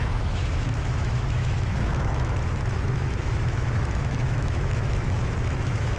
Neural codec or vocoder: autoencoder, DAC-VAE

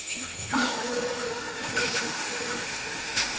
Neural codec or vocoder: autoencoder, DAC-VAE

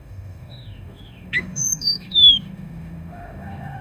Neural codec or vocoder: autoencoder, DAC-VAE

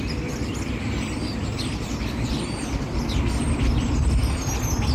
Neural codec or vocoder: none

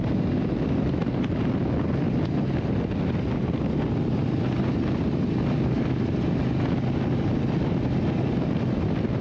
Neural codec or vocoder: none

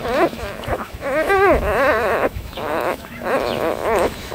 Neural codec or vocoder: autoencoder, DAC-VAE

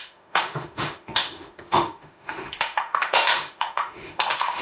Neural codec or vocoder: autoencoder, DAC-VAE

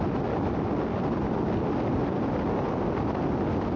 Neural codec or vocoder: none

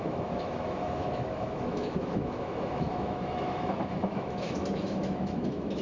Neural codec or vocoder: autoencoder, DAC-VAE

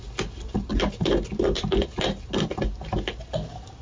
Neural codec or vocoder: none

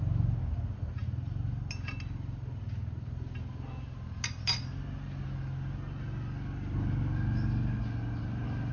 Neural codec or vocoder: none